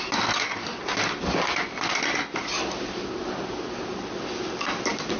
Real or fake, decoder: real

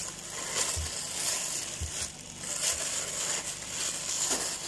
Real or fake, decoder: real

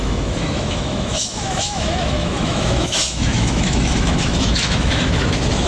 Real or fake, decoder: fake, autoencoder, DAC-VAE